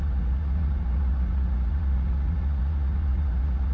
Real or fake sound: fake